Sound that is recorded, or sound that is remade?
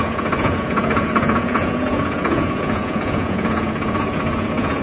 remade